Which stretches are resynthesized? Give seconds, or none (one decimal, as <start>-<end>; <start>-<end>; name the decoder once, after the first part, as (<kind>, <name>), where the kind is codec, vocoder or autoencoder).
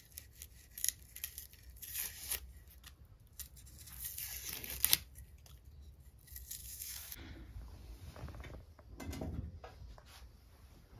6.6-7.2 (autoencoder, DAC-VAE)